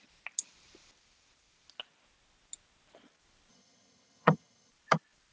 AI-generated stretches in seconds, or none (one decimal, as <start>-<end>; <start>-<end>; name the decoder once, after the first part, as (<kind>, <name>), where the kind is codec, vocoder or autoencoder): 3.5-4.7 (vocoder, HiFi-GAN)